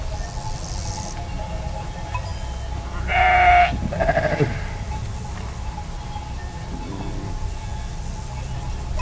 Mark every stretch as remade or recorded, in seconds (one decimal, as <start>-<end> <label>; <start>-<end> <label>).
0.0-9.0 recorded